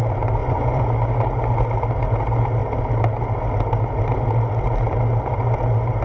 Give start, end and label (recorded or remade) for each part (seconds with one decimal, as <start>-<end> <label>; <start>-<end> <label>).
0.0-0.4 recorded; 0.4-0.9 remade; 0.9-6.0 recorded